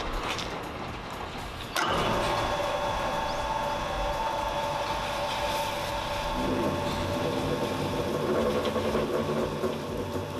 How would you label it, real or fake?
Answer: real